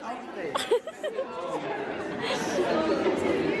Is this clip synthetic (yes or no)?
no